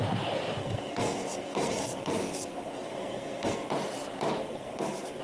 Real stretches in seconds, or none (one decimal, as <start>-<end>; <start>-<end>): 0.0-0.6; 3.7-4.4